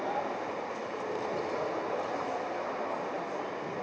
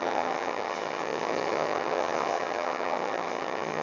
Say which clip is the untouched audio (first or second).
first